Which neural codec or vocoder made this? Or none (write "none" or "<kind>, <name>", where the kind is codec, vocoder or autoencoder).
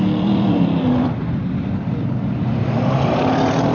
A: vocoder, BigVGAN v2